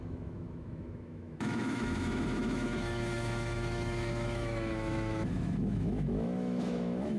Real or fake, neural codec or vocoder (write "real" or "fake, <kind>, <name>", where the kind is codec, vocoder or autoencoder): fake, autoencoder, DAC-VAE